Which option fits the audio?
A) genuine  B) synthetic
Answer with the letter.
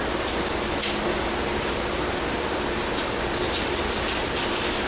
A